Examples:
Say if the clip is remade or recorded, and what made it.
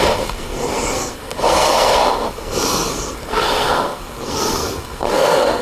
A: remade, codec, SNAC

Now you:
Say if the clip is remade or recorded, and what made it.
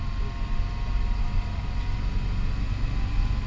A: recorded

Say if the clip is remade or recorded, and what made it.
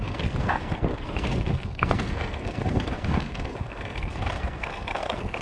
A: remade, codec, SNAC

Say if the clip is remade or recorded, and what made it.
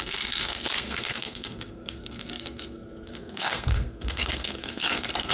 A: remade, codec, SNAC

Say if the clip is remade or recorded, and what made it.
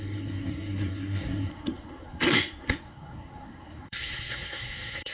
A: remade, codec, SNAC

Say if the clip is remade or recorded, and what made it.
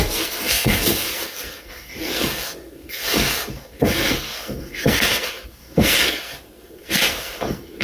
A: remade, codec, SNAC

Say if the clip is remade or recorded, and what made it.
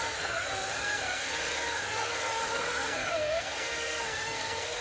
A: remade, codec, SNAC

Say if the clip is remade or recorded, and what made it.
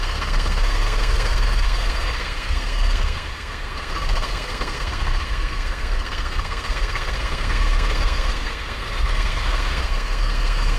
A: remade, codec, SNAC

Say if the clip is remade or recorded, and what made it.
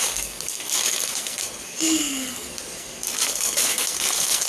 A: remade, codec, SNAC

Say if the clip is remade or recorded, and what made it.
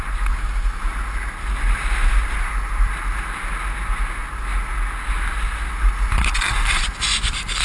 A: recorded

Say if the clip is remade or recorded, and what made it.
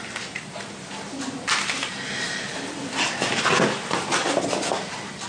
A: recorded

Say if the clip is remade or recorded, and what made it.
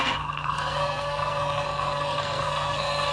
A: remade, codec, SNAC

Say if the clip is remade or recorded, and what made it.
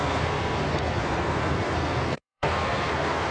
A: remade, codec, SNAC